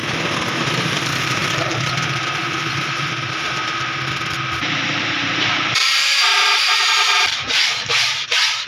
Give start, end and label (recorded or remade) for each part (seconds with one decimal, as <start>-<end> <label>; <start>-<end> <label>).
0.0-0.7 recorded; 0.7-8.7 remade